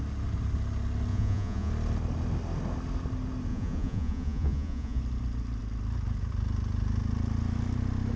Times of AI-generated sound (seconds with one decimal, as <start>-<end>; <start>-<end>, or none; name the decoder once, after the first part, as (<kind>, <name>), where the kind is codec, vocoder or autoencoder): 1.1-1.7 (vocoder, Vocos); 3.5-5.0